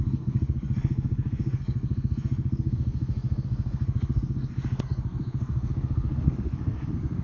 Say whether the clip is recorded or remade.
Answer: remade